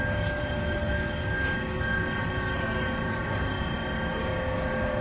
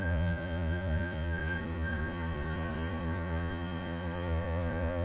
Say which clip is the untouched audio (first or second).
first